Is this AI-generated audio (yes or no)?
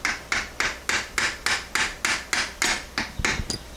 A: no